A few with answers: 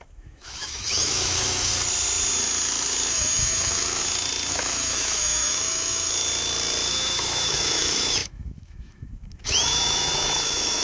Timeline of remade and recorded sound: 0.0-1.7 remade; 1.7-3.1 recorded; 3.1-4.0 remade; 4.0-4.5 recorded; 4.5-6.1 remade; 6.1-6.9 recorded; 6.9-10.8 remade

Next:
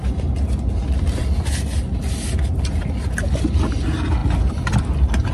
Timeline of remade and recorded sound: 0.0-4.2 recorded; 4.2-4.8 remade; 4.8-5.3 recorded

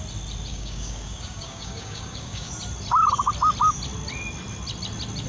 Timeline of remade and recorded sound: 0.0-0.5 recorded; 0.5-2.5 remade; 2.5-5.3 recorded

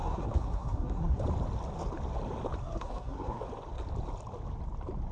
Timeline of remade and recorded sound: 0.0-1.2 remade; 1.2-2.6 recorded; 2.6-3.4 remade; 3.4-5.1 recorded

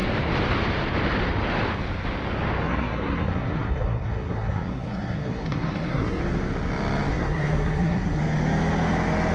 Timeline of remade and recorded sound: 0.0-2.6 recorded; 2.6-6.2 remade; 6.2-7.1 recorded; 7.1-8.2 remade; 8.2-9.3 recorded

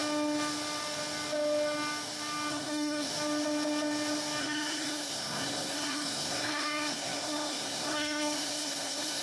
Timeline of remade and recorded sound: 0.0-2.5 recorded; 2.5-3.1 remade; 3.1-4.4 recorded; 4.4-9.2 remade

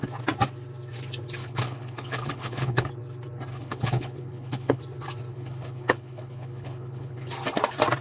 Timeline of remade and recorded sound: 0.0-1.4 recorded; 1.4-2.9 remade; 2.9-3.5 recorded; 3.5-4.8 remade; 4.8-5.3 recorded; 5.3-7.3 remade; 7.3-8.0 recorded

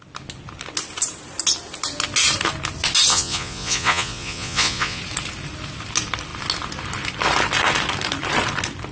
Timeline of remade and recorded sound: 0.0-3.1 recorded; 3.1-5.0 remade; 5.0-8.9 recorded